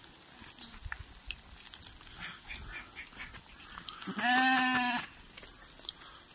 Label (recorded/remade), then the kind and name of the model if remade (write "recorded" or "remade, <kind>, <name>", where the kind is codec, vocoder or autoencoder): recorded